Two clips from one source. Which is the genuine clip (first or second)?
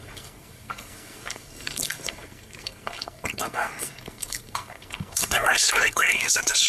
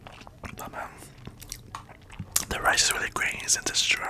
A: second